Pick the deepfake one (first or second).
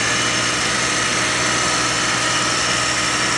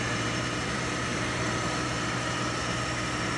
second